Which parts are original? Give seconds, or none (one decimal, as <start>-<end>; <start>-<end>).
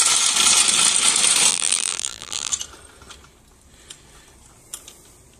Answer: 0.0-1.5; 2.5-5.4